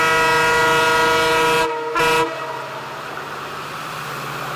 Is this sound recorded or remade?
recorded